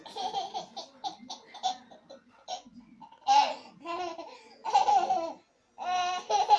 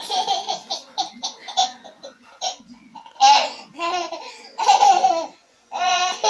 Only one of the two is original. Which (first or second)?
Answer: first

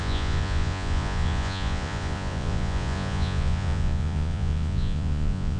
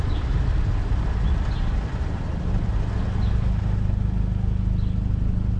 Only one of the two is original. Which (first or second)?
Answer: second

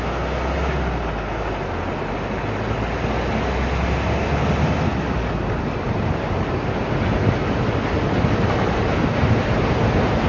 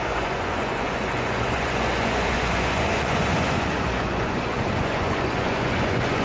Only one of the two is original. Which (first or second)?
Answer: first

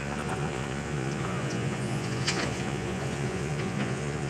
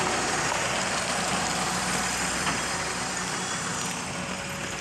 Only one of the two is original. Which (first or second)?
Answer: second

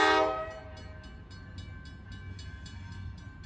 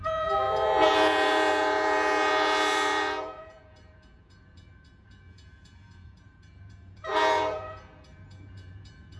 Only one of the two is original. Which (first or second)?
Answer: first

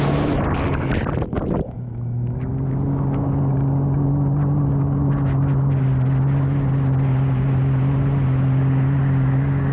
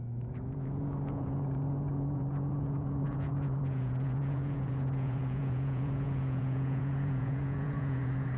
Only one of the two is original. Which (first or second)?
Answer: first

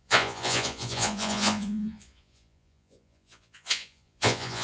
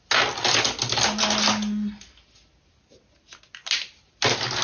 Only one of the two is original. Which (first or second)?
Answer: second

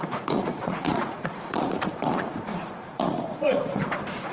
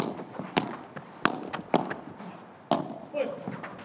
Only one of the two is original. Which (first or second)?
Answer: second